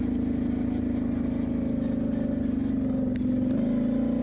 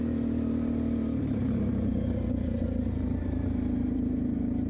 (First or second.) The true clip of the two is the first